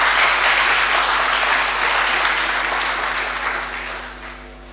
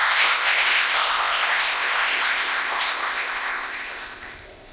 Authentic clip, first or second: first